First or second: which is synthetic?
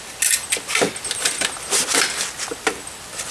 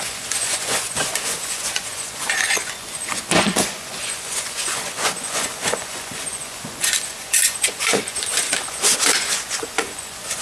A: second